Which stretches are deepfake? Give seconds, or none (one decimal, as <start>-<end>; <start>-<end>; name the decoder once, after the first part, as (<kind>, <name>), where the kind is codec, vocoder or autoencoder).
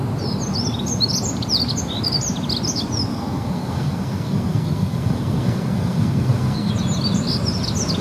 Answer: 3.1-6.7 (codec, SNAC)